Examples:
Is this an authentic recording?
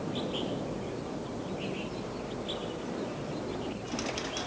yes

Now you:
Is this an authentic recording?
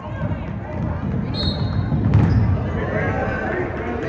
yes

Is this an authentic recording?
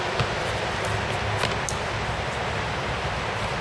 yes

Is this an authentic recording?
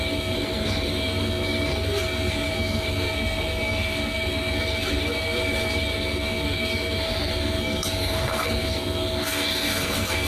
no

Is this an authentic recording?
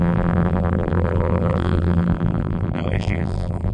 no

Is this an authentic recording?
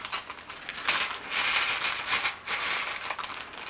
yes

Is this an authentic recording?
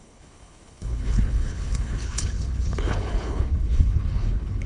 no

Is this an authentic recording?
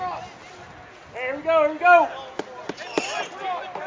yes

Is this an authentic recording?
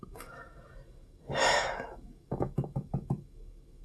no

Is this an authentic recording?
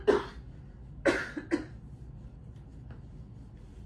yes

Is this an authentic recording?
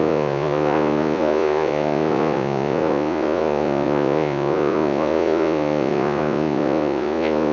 no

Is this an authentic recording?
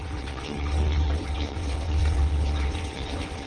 no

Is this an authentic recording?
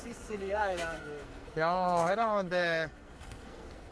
no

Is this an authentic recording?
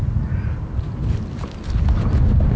yes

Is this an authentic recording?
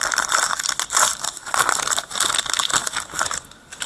yes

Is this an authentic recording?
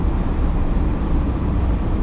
no